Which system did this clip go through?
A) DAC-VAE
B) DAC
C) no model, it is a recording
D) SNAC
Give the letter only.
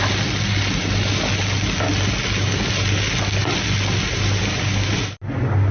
C